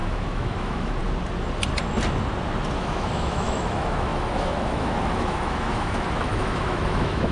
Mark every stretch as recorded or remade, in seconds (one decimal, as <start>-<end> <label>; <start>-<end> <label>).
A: 0.0-1.0 remade; 1.0-2.8 recorded; 2.8-7.3 remade